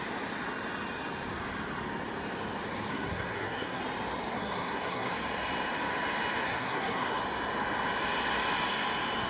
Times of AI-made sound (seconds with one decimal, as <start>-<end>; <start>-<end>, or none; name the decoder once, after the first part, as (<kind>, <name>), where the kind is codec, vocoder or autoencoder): 2.9-3.8 (codec, SNAC); 4.3-5.1; 6.4-7.2